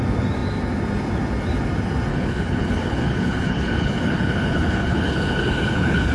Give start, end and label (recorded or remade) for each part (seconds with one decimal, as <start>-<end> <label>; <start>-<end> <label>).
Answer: 0.0-2.1 recorded; 2.1-6.1 remade